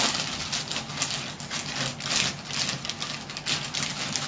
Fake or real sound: real